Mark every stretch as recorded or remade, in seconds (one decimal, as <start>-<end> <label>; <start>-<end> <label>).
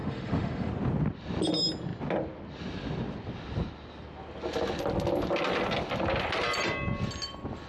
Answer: 0.0-0.7 remade; 0.7-7.7 recorded